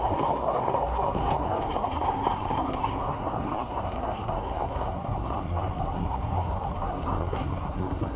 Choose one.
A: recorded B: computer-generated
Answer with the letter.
B